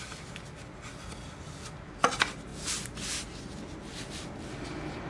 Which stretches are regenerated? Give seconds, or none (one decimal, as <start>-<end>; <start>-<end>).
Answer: none